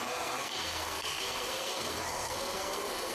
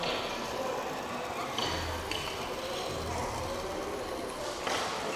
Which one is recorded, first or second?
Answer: second